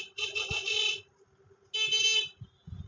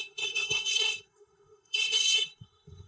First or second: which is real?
first